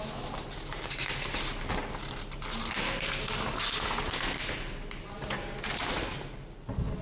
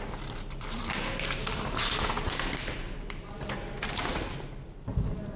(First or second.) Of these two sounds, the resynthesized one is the second